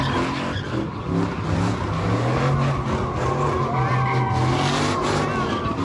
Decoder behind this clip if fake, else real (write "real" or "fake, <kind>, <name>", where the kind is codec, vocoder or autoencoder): real